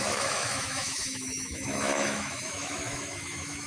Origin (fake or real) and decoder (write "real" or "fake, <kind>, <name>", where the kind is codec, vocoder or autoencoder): fake, autoencoder, DAC-VAE